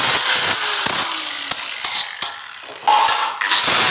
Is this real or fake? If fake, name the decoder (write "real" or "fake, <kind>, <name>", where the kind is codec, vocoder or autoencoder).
real